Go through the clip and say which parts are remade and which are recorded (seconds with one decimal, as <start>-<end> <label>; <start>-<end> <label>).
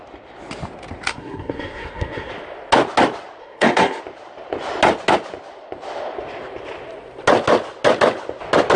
0.0-1.1 recorded; 1.1-2.3 remade; 2.3-3.4 recorded; 3.4-4.0 remade; 4.0-8.8 recorded